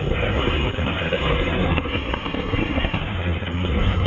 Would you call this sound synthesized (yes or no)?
yes